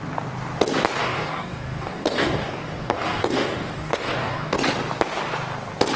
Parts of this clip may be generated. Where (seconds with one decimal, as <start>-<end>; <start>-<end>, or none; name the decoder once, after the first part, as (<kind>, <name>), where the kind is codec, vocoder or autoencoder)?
1.0-4.6 (codec, DAC)